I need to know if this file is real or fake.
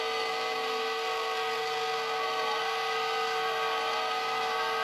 fake